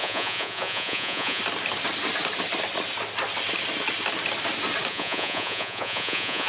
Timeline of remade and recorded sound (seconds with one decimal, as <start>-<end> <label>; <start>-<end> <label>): 0.0-1.4 remade; 1.4-4.9 recorded; 4.9-6.5 remade